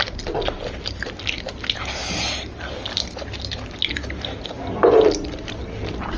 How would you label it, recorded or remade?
recorded